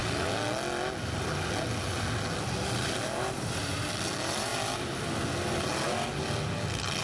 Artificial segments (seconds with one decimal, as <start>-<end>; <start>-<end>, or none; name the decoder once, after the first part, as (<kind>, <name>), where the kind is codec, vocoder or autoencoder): 2.8-4.5 (vocoder, BigVGAN v2)